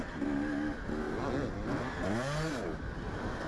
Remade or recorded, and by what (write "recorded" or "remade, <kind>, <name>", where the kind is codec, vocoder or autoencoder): recorded